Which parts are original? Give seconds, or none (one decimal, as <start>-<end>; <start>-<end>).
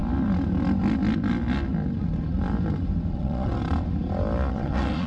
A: 0.0-3.1; 3.6-4.5